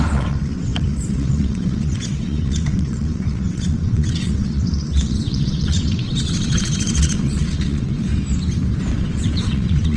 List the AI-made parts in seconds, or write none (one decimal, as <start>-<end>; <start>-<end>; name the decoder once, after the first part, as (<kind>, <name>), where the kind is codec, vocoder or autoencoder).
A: 0.0-8.1 (vocoder, WaveNeXt); 8.9-10.0